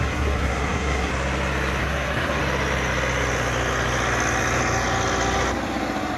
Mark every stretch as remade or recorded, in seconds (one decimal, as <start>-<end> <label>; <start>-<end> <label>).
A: 0.0-1.1 remade; 1.1-1.8 recorded; 1.8-2.4 remade; 2.4-6.2 recorded